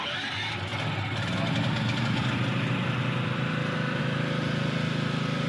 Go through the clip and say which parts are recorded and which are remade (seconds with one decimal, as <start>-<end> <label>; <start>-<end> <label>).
0.0-5.5 recorded